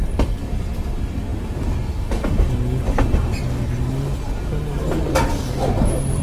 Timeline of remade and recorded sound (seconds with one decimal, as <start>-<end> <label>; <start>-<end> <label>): 0.0-6.2 recorded